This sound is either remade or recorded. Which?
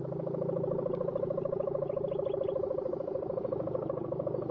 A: recorded